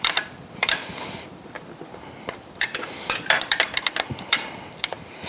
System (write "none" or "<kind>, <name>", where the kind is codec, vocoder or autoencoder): vocoder, BigVGAN v2